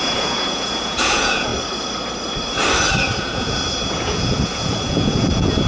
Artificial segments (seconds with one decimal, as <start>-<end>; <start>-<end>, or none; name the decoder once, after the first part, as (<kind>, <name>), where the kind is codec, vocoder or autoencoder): 0.0-1.5 (vocoder, Vocos); 3.2-5.7